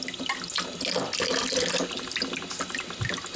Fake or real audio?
real